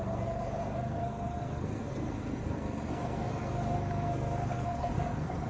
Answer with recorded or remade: remade